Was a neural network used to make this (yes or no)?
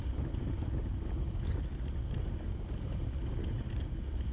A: no